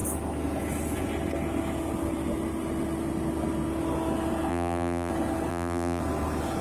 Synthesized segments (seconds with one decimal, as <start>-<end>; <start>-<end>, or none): 4.5-5.1; 5.5-6.0